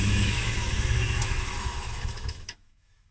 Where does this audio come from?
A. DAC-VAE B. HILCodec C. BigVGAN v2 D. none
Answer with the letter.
A